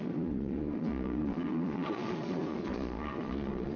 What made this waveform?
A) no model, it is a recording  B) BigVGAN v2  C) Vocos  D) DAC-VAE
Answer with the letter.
C